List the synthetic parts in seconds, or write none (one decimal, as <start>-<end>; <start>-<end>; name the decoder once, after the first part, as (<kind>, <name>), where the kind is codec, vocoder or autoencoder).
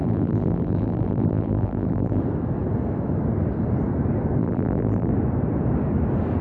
0.0-2.2 (vocoder, BigVGAN v2); 4.4-5.1